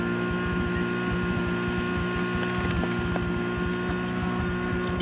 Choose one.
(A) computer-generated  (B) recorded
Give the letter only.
B